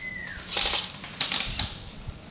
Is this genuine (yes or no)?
yes